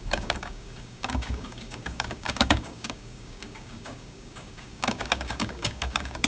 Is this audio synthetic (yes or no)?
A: yes